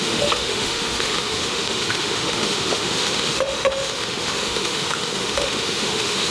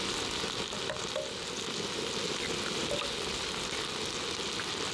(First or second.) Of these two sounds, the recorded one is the second